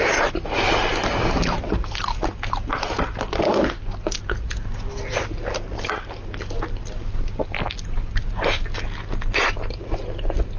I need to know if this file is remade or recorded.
recorded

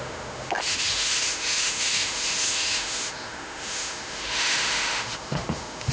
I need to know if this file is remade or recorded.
remade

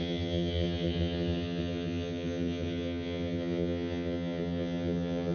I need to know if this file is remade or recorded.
remade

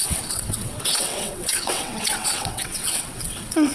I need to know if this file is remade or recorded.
remade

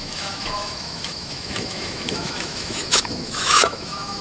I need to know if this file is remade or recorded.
remade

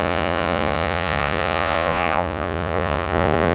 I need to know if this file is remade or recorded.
remade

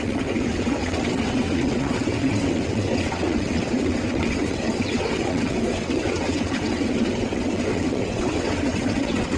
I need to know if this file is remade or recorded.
remade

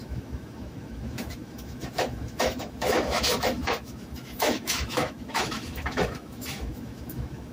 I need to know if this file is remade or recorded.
remade